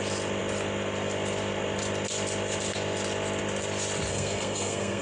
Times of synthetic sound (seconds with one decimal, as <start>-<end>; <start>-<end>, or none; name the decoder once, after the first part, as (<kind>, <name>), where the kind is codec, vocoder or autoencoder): 4.1-5.0 (codec, SNAC)